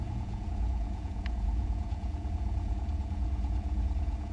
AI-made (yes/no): yes